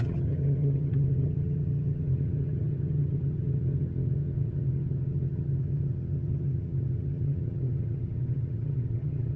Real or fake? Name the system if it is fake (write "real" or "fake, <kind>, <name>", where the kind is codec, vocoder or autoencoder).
fake, vocoder, HiFi-GAN